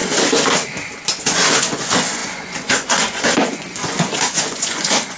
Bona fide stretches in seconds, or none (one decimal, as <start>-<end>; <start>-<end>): 0.0-1.2